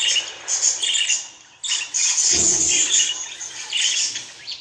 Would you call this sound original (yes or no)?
yes